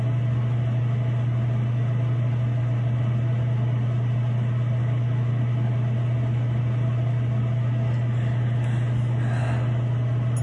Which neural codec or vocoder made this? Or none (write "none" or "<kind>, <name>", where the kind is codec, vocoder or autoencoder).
none